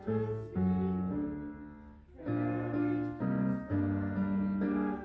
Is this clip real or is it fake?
real